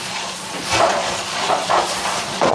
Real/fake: fake